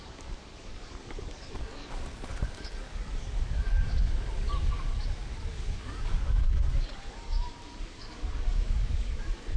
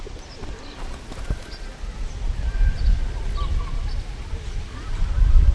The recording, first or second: second